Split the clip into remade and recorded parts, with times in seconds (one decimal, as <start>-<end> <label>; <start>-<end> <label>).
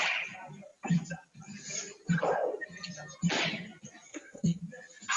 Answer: 0.0-4.1 recorded; 4.1-4.6 remade; 4.6-5.2 recorded